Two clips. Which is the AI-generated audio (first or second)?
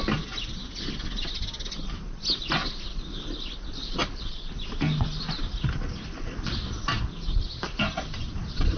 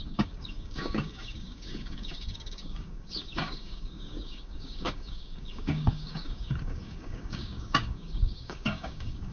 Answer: second